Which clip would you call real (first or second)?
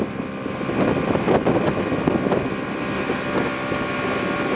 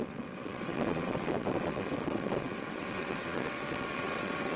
first